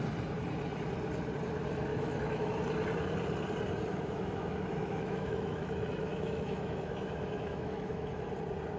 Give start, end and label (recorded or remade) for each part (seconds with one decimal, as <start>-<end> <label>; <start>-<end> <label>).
0.0-1.9 recorded; 1.9-2.5 remade; 2.5-3.9 recorded; 3.9-8.3 remade; 8.3-8.8 recorded